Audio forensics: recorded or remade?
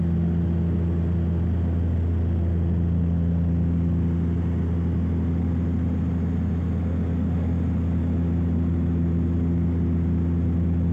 recorded